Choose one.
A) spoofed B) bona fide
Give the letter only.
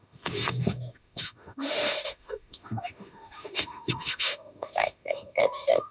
A